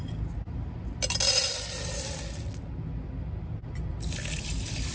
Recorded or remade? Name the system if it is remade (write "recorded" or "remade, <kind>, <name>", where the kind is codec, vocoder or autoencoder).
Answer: recorded